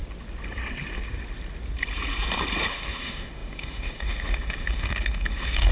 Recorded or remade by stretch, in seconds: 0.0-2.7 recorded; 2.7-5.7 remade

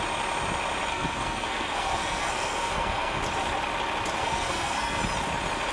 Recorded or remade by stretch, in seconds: 0.0-0.9 recorded; 0.9-3.2 remade; 3.2-4.2 recorded; 4.2-5.0 remade; 5.0-5.7 recorded